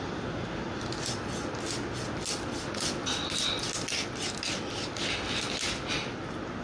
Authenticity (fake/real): real